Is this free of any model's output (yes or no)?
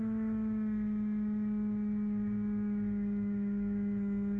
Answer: yes